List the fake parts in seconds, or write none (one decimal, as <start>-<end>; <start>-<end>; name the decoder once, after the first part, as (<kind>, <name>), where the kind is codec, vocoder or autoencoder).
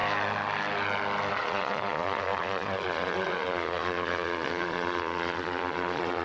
1.3-6.2 (vocoder, Vocos)